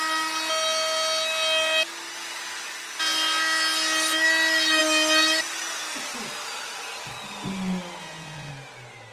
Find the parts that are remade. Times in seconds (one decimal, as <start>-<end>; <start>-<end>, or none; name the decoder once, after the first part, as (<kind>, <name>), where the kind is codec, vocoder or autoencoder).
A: 8.0-8.5 (vocoder, Vocos)